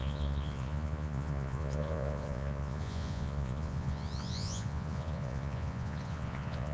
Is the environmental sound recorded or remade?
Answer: remade